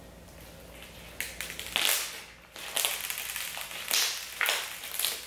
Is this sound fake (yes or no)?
no